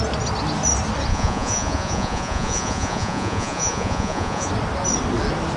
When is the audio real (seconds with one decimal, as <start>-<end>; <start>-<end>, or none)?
0.0-1.1; 4.5-5.6